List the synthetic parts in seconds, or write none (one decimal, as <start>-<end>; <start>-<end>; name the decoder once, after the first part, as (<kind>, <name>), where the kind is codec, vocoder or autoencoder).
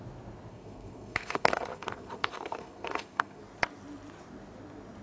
0.5-3.4 (codec, SNAC)